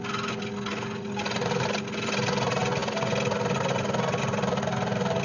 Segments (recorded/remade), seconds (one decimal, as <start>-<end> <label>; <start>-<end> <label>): 0.0-5.2 recorded

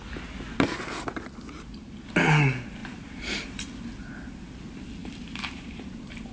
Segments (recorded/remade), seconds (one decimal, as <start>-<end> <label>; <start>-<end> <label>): 0.0-2.8 recorded; 2.8-3.8 remade; 3.8-5.0 recorded; 5.0-6.3 remade

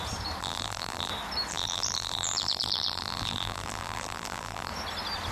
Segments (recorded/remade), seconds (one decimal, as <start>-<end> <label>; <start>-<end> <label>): 0.0-0.4 recorded; 0.4-1.1 remade; 1.1-1.5 recorded; 1.5-4.7 remade; 4.7-5.3 recorded

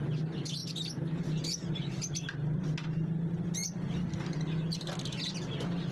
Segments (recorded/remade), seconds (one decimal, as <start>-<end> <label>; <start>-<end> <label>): 0.0-5.9 recorded

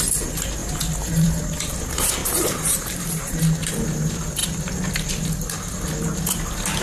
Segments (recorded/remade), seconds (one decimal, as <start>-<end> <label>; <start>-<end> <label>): 0.0-0.6 recorded; 0.6-1.6 remade; 1.6-2.2 recorded; 2.2-3.7 remade; 3.7-6.8 recorded

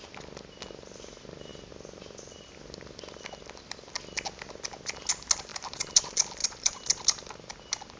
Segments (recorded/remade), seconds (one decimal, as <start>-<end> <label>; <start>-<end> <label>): 0.0-5.5 recorded; 5.5-6.0 remade; 6.0-6.4 recorded; 6.4-7.5 remade; 7.5-8.0 recorded

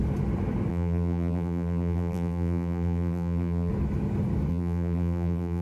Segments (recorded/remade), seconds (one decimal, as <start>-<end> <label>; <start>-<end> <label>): 0.0-0.7 recorded; 0.7-3.7 remade; 3.7-4.5 recorded; 4.5-5.6 remade